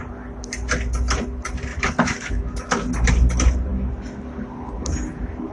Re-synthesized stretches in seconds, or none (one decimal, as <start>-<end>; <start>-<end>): 1.7-2.7